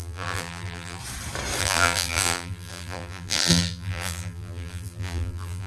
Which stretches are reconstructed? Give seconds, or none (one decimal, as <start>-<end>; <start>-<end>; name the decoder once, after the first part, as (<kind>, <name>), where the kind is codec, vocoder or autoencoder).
0.0-1.0 (vocoder, BigVGAN v2); 1.6-5.7